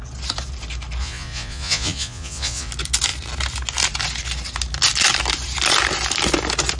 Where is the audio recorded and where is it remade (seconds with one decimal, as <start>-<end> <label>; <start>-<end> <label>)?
0.0-1.0 recorded; 1.0-2.7 remade; 2.7-6.8 recorded